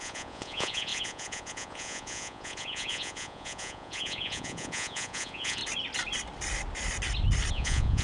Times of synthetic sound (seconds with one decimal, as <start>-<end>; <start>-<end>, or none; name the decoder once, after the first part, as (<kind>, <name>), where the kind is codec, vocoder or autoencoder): 0.0-5.6 (vocoder, Vocos); 7.5-8.0